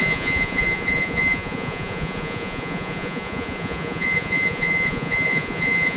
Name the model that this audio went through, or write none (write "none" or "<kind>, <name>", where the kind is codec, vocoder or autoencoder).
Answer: vocoder, Vocos